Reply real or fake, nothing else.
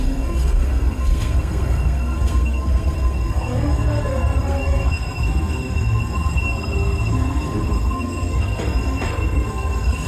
fake